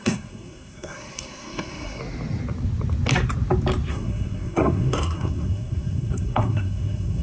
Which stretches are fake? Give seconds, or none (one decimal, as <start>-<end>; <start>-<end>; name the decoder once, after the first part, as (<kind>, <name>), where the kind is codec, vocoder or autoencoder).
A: 0.0-2.0 (codec, SNAC); 3.9-7.2